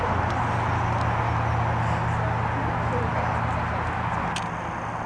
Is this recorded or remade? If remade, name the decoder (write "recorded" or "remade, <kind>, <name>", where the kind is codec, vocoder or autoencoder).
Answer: recorded